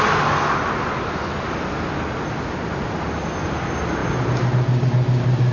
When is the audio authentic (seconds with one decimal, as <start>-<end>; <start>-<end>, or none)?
0.0-5.5